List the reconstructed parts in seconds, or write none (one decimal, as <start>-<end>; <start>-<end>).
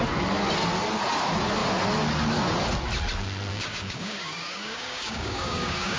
3.5-6.0